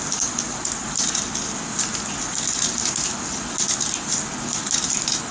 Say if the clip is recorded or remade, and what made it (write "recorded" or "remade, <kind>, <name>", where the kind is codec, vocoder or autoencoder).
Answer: recorded